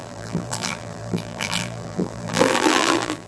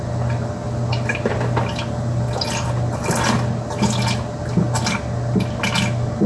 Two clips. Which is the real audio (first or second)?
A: second